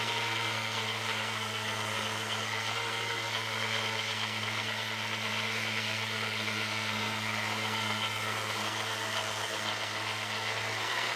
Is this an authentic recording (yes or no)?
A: no